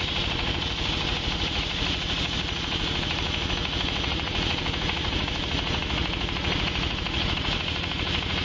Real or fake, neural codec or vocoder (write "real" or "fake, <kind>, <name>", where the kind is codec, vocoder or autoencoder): fake, vocoder, Vocos